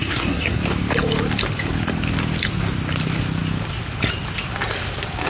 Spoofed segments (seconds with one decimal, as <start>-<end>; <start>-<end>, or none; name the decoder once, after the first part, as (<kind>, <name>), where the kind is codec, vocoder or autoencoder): 0.0-0.6 (codec, SNAC)